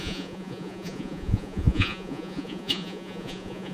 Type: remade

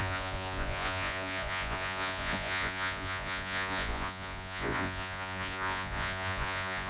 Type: remade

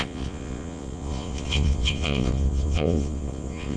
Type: remade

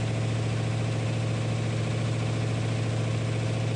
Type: recorded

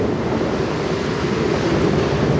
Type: recorded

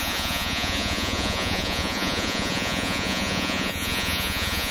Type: remade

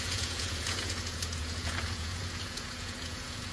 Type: remade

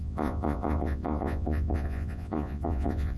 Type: remade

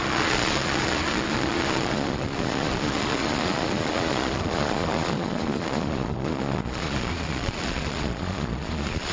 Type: remade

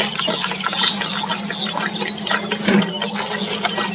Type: recorded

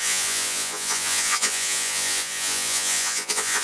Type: remade